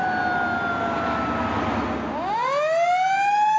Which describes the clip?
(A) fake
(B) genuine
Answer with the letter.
B